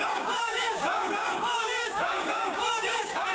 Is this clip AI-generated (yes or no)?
yes